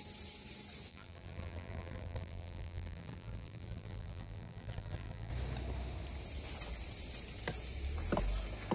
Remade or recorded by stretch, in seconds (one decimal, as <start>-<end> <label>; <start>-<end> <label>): 0.0-0.9 recorded; 0.9-5.3 remade; 5.3-8.7 recorded